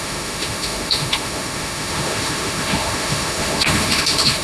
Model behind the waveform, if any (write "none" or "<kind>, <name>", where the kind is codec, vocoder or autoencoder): autoencoder, DAC-VAE